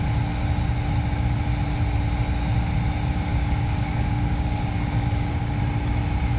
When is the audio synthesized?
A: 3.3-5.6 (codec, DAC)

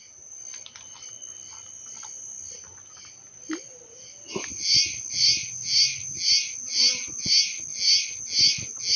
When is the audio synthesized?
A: none

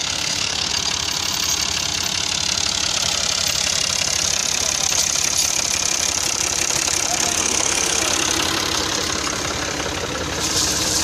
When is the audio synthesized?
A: 0.0-0.7 (codec, SNAC); 7.4-8.0

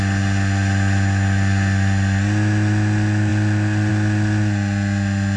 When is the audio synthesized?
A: none

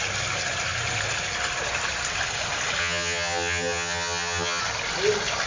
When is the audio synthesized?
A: 2.8-4.6 (vocoder, HiFi-GAN)

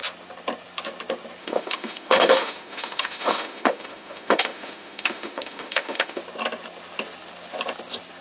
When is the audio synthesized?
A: 1.4-6.2 (autoencoder, DAC-VAE)

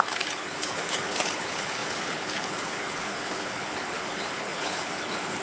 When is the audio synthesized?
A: 0.0-5.4 (codec, HILCodec)

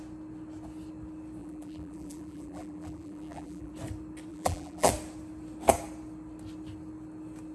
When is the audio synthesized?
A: 1.4-3.7 (vocoder, BigVGAN v2); 4.3-4.9